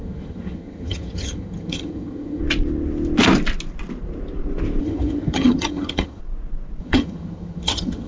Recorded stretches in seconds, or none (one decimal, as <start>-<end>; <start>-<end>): 2.4-4.8; 6.2-6.8